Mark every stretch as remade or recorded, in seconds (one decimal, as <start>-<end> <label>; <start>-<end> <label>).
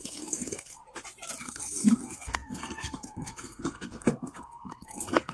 0.0-0.8 remade; 0.8-1.4 recorded; 1.4-5.3 remade